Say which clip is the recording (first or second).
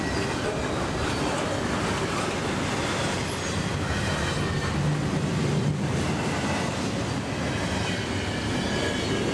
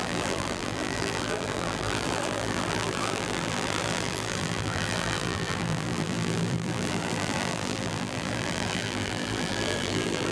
first